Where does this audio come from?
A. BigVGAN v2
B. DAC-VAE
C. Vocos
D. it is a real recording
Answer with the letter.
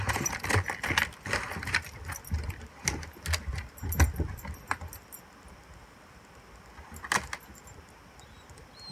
D